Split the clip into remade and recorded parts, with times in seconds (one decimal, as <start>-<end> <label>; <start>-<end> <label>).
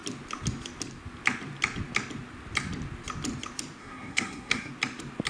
0.0-3.8 recorded; 3.8-4.7 remade; 4.7-5.3 recorded